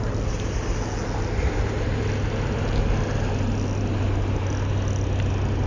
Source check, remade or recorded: recorded